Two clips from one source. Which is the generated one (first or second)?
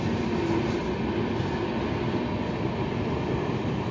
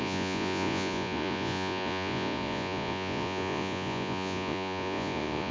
second